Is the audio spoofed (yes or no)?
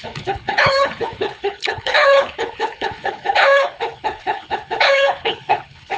yes